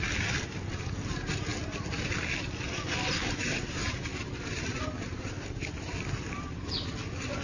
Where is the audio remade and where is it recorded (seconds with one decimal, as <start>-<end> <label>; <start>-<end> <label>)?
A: 0.0-7.4 recorded